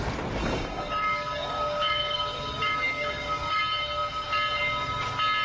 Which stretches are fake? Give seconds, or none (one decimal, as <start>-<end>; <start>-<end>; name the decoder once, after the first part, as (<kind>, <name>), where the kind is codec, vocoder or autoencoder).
0.4-3.6 (codec, DAC)